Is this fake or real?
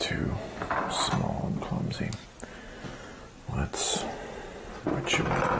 real